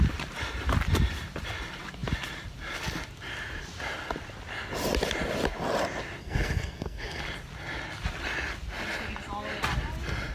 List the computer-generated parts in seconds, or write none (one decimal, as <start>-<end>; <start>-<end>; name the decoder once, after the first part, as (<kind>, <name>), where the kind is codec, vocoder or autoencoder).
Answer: 6.2-7.2 (codec, SNAC)